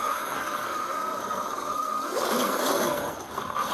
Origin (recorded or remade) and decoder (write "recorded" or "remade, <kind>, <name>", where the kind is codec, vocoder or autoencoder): remade, codec, SNAC